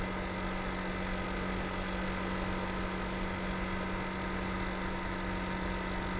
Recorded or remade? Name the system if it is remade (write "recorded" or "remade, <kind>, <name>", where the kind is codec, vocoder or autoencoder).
recorded